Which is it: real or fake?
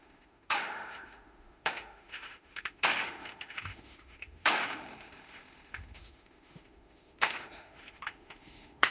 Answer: fake